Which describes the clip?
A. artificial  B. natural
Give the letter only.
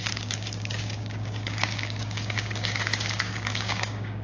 A